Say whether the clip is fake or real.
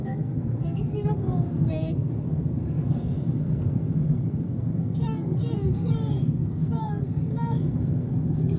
fake